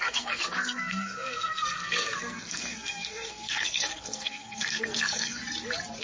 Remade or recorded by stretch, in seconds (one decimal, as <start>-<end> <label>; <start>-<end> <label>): 0.0-5.4 remade; 5.4-6.0 recorded